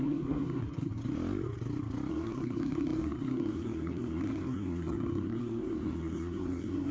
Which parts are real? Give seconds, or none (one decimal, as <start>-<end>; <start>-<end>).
1.0-2.1